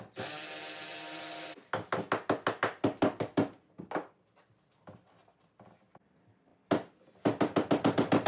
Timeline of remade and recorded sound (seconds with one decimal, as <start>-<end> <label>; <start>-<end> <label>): 0.0-8.3 recorded